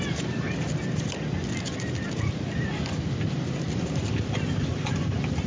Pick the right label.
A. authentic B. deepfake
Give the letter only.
A